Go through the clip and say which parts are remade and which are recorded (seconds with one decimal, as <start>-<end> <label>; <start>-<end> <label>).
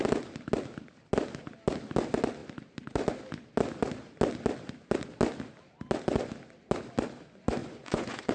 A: 0.0-7.6 recorded; 7.6-8.3 remade